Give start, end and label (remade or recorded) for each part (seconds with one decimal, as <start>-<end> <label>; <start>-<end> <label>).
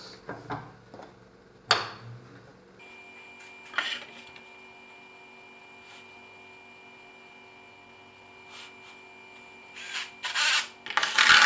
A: 0.0-11.5 recorded